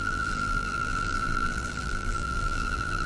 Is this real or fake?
fake